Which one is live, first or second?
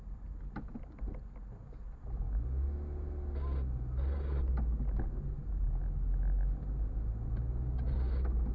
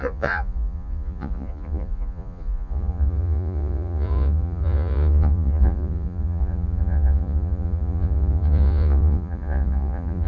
first